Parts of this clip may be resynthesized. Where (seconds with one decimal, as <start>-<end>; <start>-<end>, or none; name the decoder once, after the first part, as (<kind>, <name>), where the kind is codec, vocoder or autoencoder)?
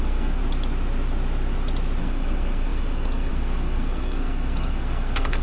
0.0-0.4 (codec, SNAC); 2.0-5.4